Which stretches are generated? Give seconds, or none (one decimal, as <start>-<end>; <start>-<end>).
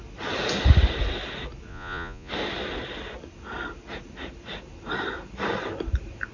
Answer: 1.7-2.3